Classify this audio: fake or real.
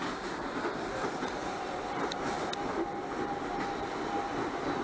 real